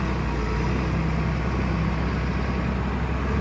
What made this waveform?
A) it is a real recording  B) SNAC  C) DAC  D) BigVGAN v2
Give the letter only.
A